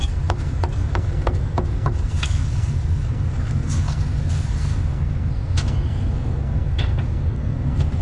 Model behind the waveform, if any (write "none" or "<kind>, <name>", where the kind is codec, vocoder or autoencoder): codec, SNAC